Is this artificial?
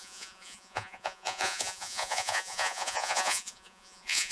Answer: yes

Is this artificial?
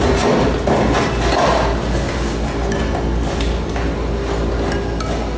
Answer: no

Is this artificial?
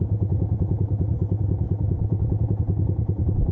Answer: no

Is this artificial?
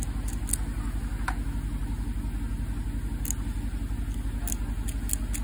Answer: no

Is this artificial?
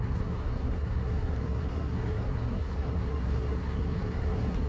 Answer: yes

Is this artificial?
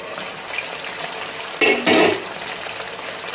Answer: no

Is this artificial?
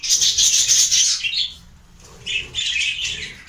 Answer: no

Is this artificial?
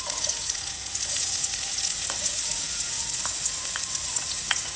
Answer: yes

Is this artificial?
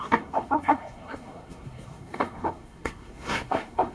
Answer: yes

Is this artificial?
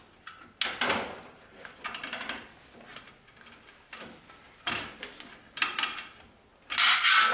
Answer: no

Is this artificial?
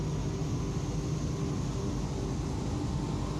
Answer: no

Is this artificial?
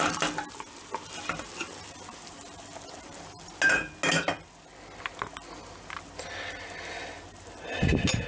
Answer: no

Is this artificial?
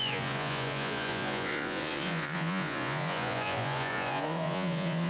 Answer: yes